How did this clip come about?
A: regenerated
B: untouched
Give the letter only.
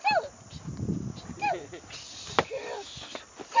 B